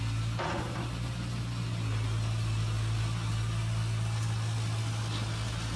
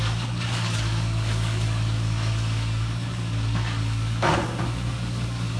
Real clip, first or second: first